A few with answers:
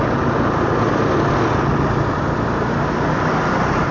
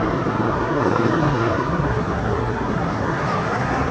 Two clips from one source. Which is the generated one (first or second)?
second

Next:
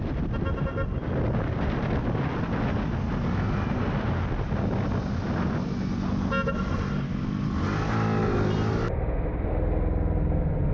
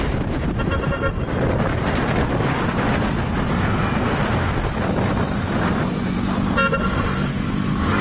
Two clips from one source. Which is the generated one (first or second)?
second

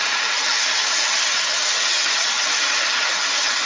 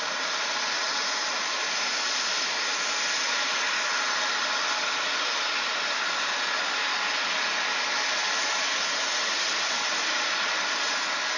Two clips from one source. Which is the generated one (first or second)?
first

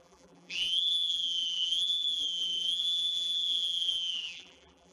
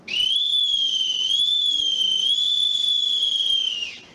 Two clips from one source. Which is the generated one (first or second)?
first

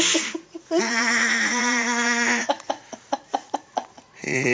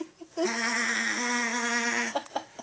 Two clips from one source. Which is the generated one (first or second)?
first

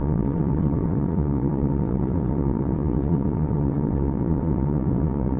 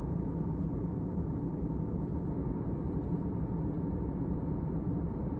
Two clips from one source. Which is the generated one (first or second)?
first